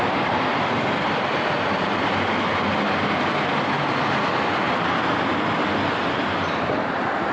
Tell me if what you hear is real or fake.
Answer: real